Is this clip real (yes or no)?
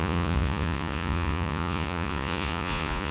no